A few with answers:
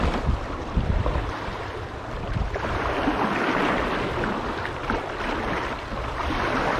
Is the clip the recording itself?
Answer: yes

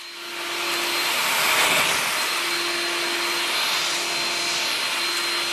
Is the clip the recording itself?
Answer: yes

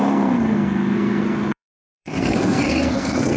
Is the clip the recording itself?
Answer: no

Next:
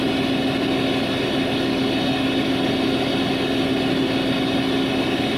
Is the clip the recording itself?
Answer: yes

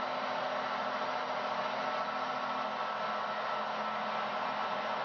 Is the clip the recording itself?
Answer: yes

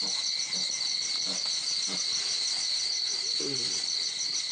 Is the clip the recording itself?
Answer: yes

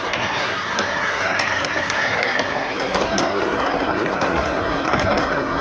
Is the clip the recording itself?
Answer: no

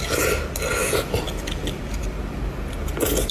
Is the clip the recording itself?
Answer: yes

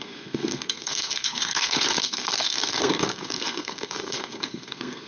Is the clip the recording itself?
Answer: no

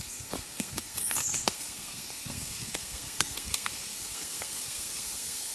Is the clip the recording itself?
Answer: no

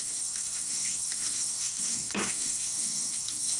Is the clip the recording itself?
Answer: no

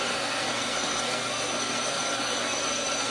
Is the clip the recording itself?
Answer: no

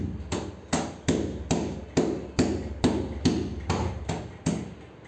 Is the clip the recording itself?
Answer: yes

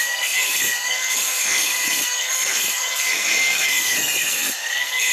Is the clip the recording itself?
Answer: no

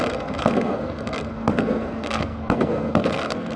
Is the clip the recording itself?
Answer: no